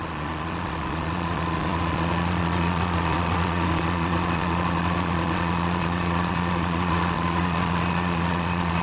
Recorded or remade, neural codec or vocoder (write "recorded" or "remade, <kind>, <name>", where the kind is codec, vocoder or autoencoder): remade, vocoder, Vocos